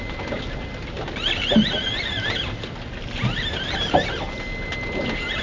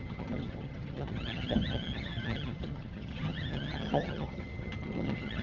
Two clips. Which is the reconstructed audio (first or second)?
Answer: second